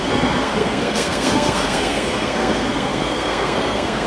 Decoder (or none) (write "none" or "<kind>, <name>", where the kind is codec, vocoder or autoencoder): codec, SNAC